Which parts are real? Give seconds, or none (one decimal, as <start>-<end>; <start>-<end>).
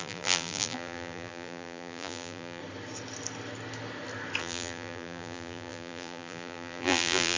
2.6-4.4